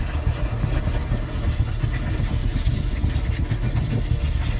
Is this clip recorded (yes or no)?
yes